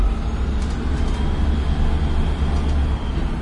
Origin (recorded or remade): recorded